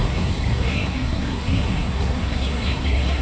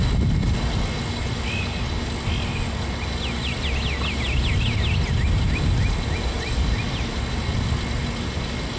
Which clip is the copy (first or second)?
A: first